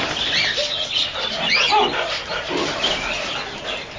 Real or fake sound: real